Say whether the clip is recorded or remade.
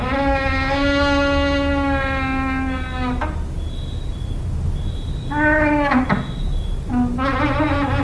recorded